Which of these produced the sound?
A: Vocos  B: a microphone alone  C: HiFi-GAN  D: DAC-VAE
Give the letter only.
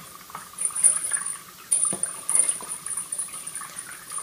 B